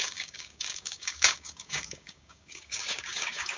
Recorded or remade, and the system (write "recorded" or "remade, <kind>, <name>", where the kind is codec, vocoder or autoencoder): remade, codec, DAC